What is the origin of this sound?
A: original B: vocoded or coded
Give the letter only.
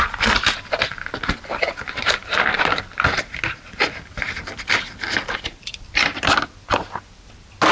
A